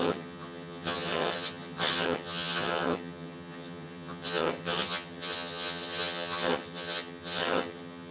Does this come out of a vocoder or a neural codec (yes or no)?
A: yes